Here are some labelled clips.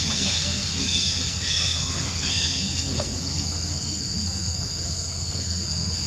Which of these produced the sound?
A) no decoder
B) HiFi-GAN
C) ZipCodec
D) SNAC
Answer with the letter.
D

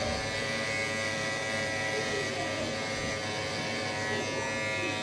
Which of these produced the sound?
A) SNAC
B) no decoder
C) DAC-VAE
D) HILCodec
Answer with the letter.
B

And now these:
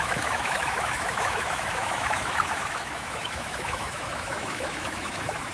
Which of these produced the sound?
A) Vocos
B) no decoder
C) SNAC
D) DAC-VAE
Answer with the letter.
D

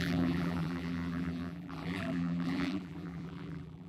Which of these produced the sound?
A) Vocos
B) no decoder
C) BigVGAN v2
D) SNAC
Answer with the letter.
C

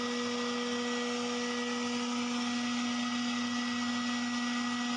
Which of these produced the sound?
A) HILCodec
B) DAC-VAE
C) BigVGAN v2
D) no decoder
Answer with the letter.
D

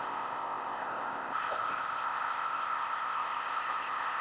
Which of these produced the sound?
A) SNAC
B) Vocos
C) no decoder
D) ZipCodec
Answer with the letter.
D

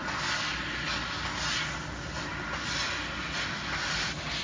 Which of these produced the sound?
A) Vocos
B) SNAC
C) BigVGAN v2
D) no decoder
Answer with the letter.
D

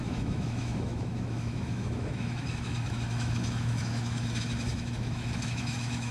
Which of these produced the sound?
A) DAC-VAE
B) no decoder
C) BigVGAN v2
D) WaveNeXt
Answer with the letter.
A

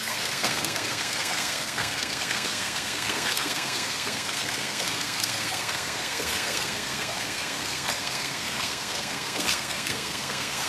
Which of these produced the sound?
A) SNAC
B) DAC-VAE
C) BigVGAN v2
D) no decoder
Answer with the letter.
A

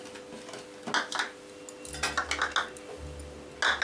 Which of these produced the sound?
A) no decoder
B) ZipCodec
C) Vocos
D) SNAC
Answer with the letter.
A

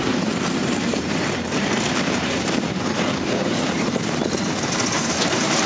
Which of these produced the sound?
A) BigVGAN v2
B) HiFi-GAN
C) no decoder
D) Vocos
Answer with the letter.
A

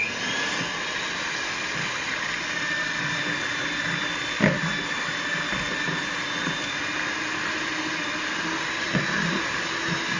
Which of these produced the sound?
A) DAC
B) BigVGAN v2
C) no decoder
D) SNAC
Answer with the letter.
C